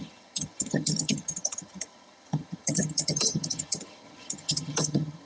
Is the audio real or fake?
fake